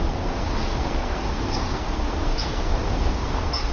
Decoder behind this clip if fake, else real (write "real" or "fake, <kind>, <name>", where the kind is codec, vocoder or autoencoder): fake, codec, SNAC